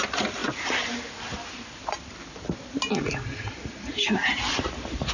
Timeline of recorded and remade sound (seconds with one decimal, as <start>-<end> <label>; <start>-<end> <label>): 0.0-5.1 recorded